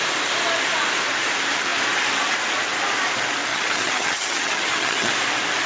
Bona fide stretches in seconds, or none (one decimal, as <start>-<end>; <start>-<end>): 0.0-3.5; 5.1-5.7